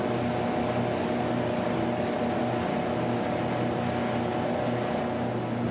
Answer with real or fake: real